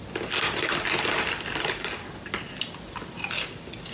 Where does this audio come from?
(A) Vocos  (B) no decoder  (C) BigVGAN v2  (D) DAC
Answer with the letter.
B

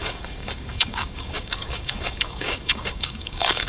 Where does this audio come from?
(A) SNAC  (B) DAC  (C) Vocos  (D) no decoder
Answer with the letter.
B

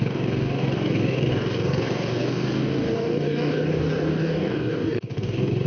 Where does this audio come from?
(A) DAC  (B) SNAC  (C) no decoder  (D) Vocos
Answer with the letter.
A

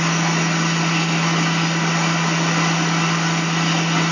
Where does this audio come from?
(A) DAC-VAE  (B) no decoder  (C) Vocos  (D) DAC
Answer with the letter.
B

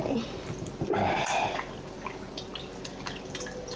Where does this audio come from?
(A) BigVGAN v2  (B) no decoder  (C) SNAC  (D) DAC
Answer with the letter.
B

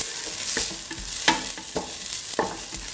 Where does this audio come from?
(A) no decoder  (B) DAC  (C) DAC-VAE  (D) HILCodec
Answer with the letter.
A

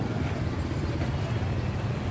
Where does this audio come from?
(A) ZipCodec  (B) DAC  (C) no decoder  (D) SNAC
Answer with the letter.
C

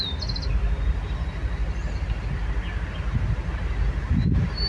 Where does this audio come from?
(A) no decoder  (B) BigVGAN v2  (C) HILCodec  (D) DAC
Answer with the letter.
A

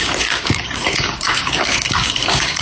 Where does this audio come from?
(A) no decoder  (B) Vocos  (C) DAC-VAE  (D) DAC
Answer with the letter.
D